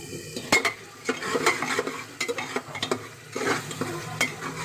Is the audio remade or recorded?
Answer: recorded